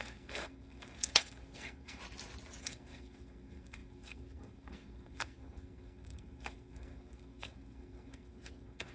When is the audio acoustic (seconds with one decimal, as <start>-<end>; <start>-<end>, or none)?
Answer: 2.0-2.6

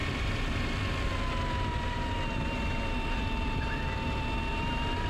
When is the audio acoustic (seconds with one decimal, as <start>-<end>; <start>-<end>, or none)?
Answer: 0.0-5.1

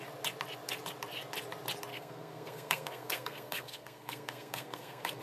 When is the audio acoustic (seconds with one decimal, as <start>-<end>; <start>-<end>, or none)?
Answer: 0.0-1.9

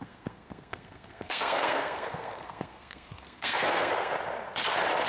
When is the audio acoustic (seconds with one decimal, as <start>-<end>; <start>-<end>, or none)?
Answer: 4.1-5.1

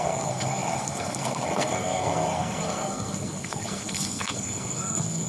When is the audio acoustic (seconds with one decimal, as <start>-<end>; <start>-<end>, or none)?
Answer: none